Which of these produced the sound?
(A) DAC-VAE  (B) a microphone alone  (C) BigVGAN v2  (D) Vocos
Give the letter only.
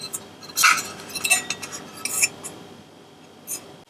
B